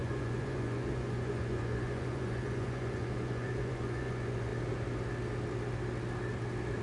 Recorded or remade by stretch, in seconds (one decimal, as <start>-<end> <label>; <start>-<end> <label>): 0.0-4.5 remade; 4.5-6.8 recorded